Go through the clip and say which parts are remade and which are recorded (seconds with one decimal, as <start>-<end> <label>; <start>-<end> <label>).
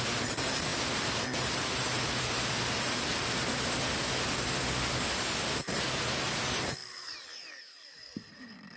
0.0-0.7 recorded; 0.7-2.8 remade; 2.8-6.8 recorded; 6.8-7.4 remade; 7.4-8.8 recorded